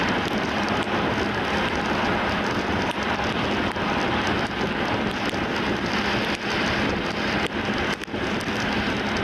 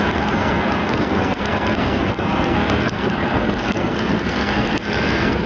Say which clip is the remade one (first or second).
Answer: second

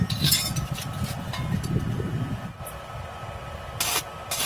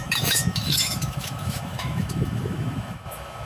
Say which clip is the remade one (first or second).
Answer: second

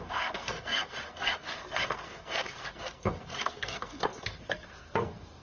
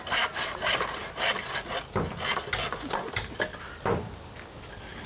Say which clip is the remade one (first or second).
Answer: first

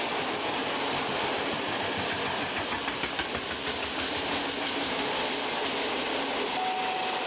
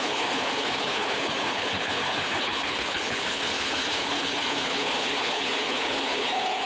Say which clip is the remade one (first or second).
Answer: second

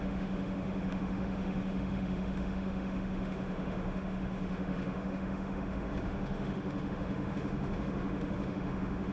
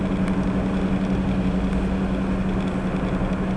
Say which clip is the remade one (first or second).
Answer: first